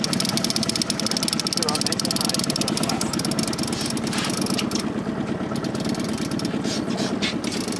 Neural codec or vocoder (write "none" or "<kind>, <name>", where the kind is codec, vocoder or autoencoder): none